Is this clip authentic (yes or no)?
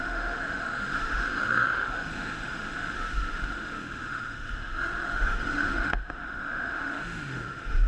no